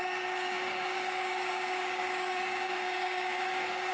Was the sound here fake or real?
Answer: fake